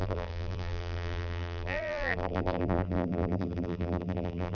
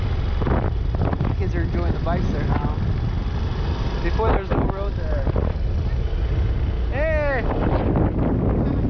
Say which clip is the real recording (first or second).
second